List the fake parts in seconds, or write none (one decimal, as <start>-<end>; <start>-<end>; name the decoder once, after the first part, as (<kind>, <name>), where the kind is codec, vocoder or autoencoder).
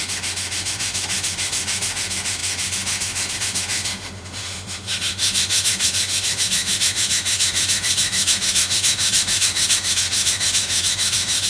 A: 0.0-11.5 (autoencoder, DAC-VAE)